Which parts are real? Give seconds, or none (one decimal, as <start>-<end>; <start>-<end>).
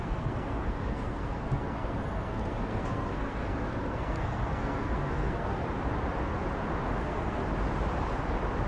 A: 5.6-7.0; 7.4-8.7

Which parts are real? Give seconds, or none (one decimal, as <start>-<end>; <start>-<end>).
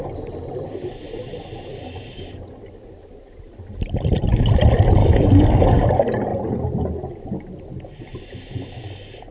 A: 0.0-5.0; 5.8-9.3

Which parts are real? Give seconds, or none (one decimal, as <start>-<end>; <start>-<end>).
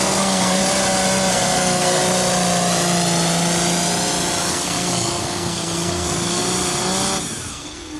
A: 0.6-1.3; 2.0-4.5; 6.4-7.5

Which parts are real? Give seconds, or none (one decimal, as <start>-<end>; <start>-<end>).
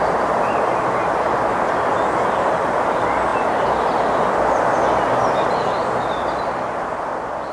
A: 0.0-7.5